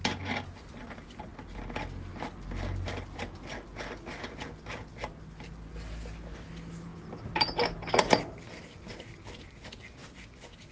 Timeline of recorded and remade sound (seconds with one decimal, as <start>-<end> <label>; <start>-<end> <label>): 0.0-10.7 recorded